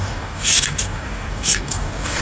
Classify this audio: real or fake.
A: fake